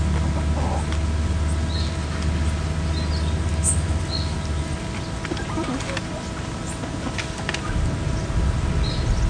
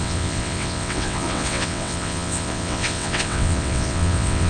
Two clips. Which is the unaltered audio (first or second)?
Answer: first